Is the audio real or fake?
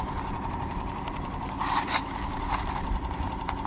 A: fake